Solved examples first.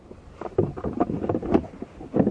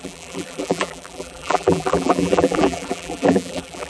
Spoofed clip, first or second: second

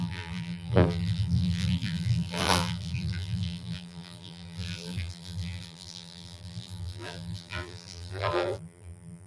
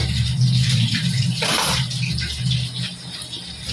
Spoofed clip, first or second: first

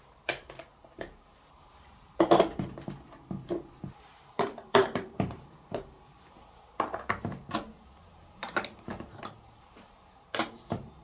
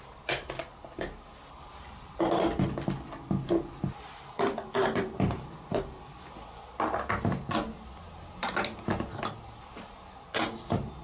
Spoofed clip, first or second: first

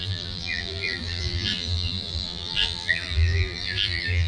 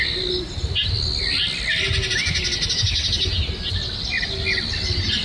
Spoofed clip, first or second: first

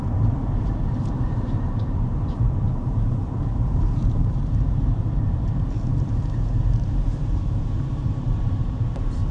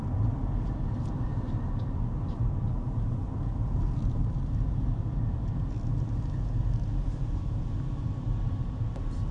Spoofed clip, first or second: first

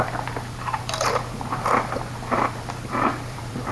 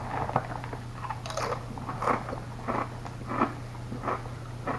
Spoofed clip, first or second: first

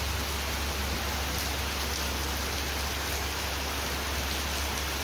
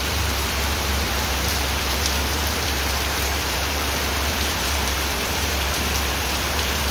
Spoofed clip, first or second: second